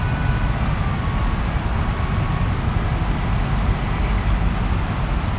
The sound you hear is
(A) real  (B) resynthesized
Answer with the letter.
A